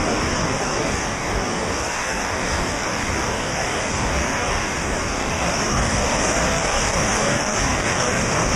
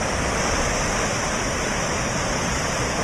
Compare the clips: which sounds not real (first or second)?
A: first